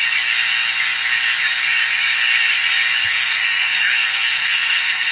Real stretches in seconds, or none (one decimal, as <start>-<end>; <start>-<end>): 0.0-3.1